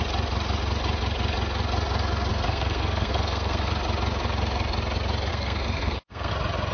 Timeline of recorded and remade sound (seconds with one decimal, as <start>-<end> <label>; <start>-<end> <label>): 0.0-2.3 recorded; 2.3-3.7 remade; 3.7-5.3 recorded; 5.3-6.3 remade; 6.3-6.7 recorded